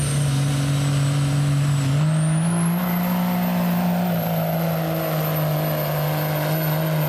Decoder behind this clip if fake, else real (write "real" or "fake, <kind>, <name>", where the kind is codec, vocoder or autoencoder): real